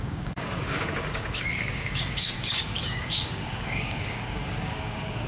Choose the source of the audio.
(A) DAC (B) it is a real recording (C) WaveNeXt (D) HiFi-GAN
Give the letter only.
A